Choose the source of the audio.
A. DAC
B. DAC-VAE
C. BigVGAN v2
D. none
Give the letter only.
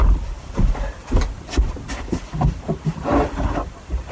C